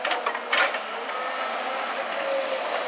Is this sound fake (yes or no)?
no